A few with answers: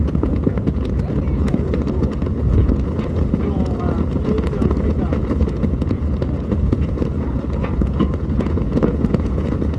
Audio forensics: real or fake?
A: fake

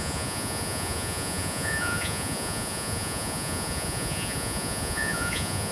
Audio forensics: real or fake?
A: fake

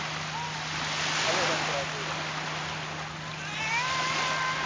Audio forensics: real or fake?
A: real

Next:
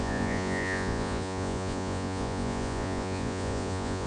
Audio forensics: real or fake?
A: fake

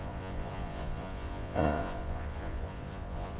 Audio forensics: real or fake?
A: fake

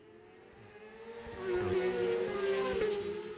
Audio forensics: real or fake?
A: real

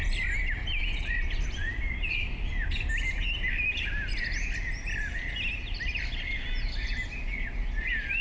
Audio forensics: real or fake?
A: real